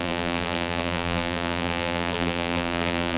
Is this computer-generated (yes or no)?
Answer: yes